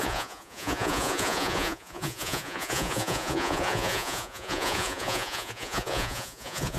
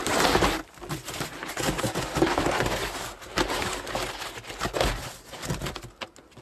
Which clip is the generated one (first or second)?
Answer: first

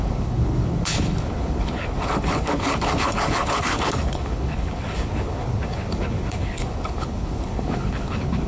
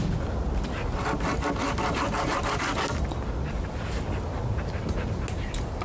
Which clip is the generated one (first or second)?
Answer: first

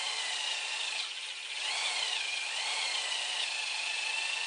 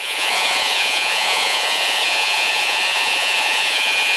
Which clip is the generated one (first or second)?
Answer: second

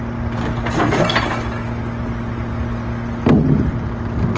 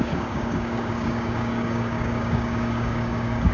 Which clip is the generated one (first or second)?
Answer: second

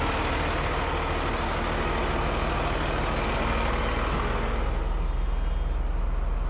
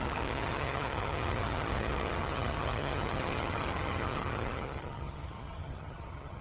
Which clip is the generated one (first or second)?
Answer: second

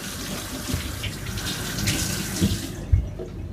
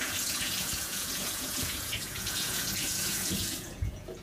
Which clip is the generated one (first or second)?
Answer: second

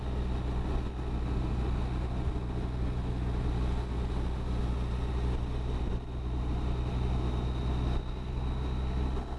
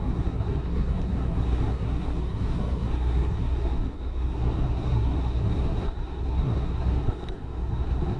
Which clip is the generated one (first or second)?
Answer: second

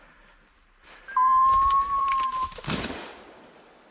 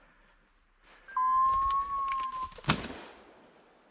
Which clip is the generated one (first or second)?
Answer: first